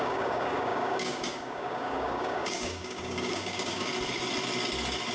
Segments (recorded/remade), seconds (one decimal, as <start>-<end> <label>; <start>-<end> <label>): 0.0-3.9 remade; 3.9-5.1 recorded